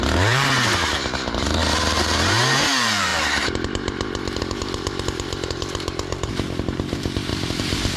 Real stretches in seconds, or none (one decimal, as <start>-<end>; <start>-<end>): none